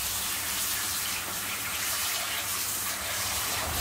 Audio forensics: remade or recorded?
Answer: remade